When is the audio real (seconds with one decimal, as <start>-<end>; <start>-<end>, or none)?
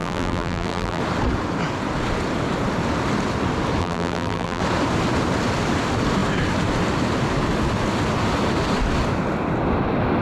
1.0-3.8; 4.6-10.2